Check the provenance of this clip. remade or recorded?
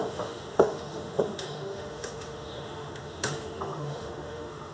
remade